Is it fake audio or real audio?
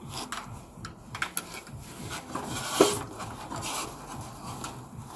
real